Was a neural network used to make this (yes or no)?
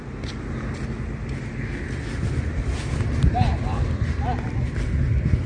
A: no